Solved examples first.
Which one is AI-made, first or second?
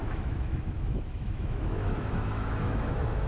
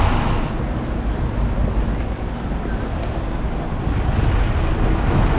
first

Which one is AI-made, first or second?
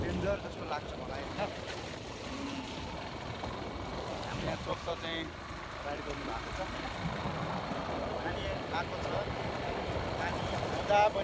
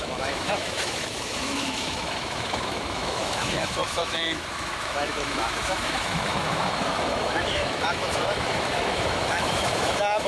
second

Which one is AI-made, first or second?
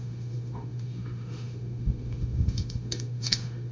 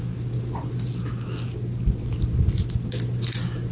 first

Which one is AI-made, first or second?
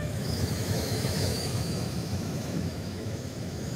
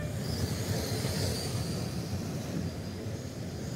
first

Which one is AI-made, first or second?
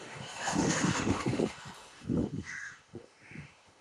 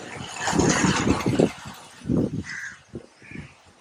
first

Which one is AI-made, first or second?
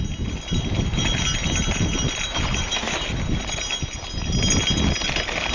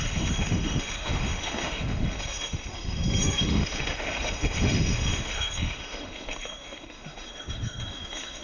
second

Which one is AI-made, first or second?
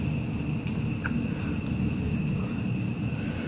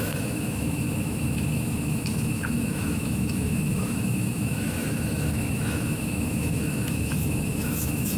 second